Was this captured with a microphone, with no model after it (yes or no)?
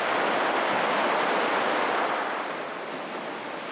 yes